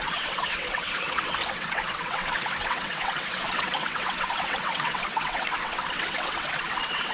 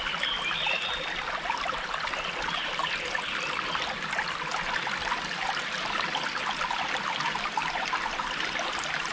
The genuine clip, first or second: second